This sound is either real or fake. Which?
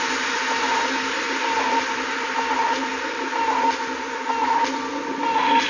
real